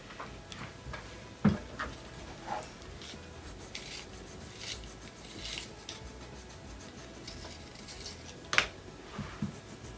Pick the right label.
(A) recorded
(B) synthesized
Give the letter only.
A